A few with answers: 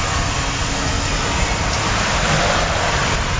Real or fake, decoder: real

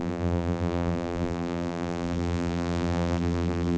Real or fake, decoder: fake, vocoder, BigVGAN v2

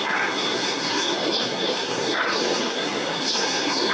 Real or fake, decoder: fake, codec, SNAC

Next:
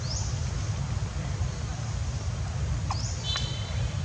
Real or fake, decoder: real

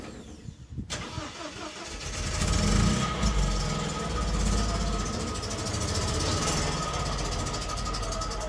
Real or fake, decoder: real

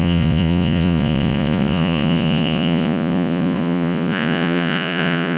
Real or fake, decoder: fake, vocoder, Vocos